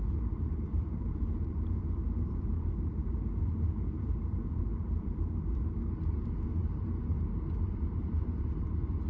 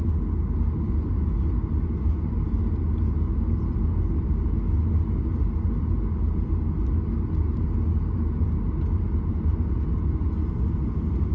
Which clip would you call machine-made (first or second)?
first